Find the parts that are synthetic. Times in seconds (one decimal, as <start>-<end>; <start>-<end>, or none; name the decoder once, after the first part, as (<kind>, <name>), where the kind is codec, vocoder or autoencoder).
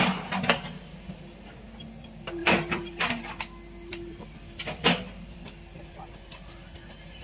2.4-3.2 (vocoder, BigVGAN v2); 3.9-5.8